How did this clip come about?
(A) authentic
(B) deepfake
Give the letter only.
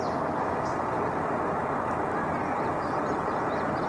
A